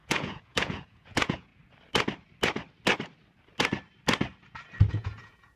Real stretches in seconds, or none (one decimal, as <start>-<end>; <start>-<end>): 1.5-4.9